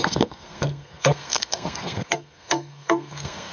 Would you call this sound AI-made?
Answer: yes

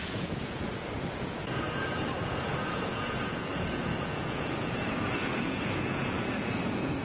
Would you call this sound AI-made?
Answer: yes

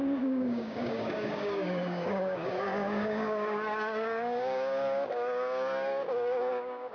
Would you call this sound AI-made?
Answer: yes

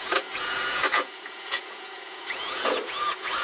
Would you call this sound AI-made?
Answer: yes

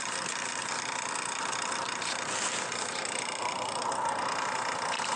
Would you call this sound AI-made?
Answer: no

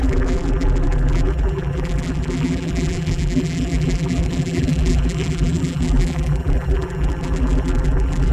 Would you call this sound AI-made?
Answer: yes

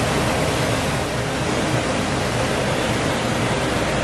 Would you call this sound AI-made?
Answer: no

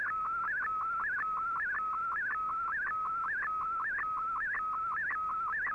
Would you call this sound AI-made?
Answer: no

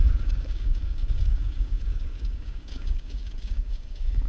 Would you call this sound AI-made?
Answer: yes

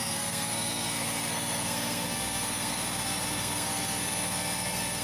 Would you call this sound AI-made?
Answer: yes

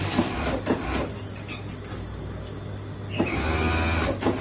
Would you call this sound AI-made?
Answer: no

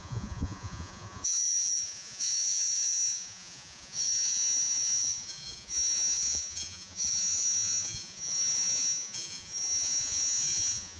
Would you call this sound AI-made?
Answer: yes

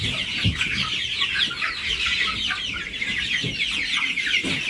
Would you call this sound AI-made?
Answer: no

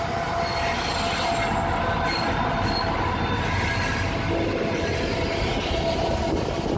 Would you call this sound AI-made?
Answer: no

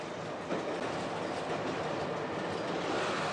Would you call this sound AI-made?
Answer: no